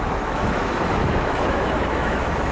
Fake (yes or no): yes